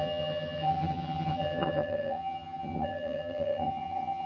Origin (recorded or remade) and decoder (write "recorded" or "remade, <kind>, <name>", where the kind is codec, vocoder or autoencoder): remade, vocoder, HiFi-GAN